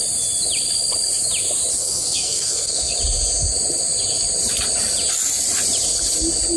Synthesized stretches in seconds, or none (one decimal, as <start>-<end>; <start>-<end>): 1.8-2.9

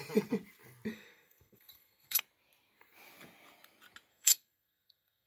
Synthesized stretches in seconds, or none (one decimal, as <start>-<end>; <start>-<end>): 0.9-2.2; 4.1-5.3

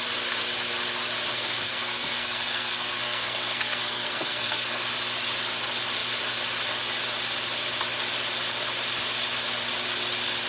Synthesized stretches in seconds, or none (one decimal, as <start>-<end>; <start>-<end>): 1.3-4.8

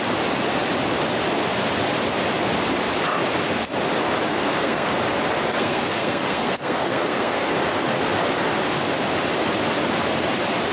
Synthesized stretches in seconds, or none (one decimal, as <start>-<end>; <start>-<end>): 4.3-4.9; 5.5-7.5

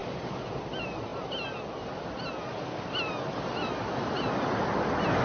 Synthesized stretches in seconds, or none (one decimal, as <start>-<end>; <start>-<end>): none

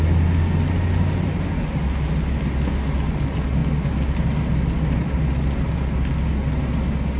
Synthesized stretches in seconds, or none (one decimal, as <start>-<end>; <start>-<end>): none

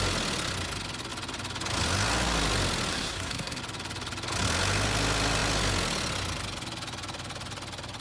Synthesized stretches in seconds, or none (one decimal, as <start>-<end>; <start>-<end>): 2.9-3.6

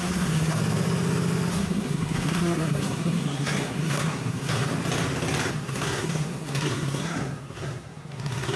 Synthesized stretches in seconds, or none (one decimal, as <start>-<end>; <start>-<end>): 0.0-0.6; 1.5-4.7; 5.5-8.6